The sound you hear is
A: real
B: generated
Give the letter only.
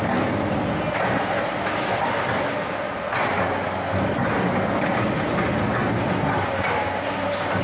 A